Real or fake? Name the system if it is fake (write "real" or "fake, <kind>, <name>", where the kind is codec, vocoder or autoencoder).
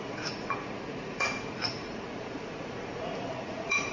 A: fake, vocoder, Vocos